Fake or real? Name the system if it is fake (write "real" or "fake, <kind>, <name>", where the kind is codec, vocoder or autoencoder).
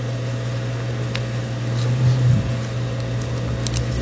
real